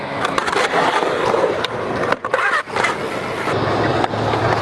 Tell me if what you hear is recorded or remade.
recorded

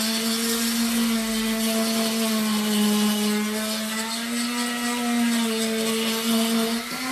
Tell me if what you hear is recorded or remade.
recorded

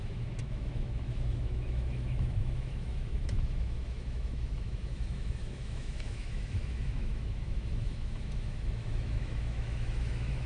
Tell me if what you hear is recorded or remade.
remade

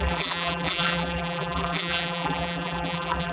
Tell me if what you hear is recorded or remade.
remade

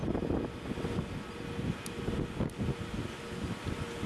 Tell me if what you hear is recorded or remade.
recorded